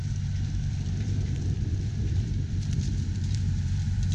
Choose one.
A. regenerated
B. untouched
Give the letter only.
A